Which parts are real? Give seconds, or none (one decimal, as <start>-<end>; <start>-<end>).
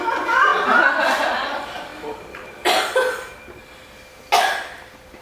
0.0-5.2